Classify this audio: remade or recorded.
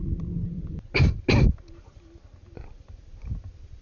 recorded